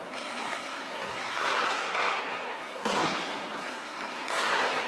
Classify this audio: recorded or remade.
remade